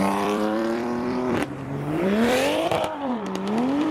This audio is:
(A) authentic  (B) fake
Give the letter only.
B